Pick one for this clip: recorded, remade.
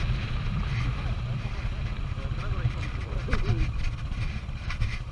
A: remade